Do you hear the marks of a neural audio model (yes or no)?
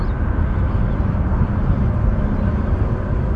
no